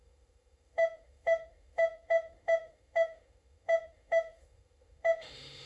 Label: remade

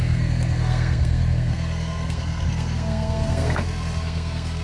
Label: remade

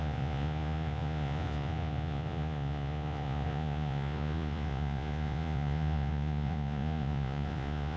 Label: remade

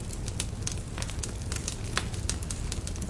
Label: recorded